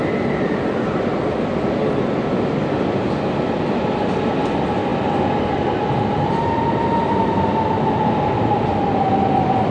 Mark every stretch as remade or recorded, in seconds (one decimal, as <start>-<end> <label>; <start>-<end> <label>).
0.0-9.7 recorded

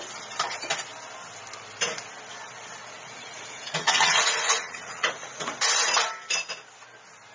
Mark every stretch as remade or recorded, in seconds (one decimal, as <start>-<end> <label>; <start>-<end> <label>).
0.0-2.8 recorded; 2.8-5.5 remade; 5.5-7.3 recorded

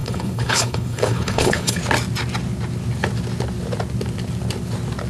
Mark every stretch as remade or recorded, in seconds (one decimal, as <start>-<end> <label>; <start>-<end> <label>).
0.0-1.8 remade; 1.8-5.1 recorded

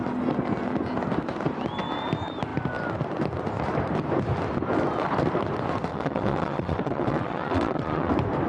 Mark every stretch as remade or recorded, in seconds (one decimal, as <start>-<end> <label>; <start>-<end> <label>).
0.0-5.9 recorded; 5.9-8.1 remade; 8.1-8.5 recorded

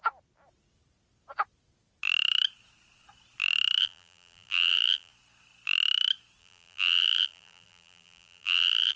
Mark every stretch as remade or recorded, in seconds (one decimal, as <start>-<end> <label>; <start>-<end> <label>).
0.0-3.8 recorded; 3.8-5.1 remade; 5.1-6.4 recorded; 6.4-9.0 remade

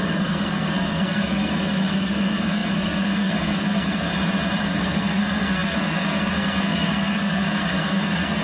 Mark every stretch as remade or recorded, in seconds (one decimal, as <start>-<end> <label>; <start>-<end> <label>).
0.0-4.1 remade; 4.1-4.6 recorded; 4.6-8.4 remade